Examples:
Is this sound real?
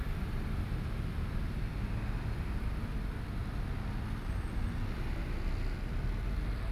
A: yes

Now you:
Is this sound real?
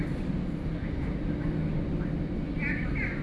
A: yes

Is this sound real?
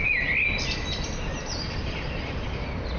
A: yes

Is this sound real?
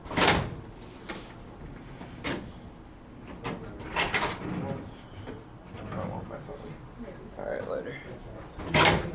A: yes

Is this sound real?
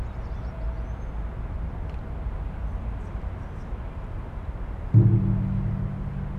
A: yes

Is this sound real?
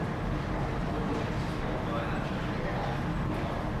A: yes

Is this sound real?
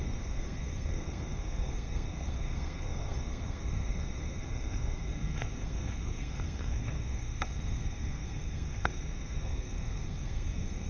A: no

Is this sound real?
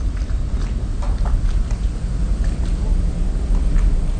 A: yes